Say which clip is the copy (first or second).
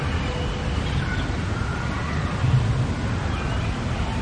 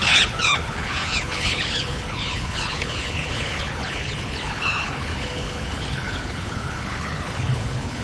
second